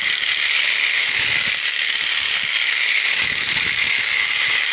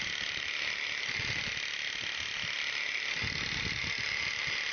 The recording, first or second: second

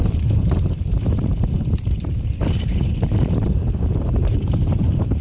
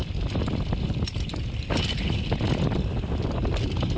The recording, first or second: second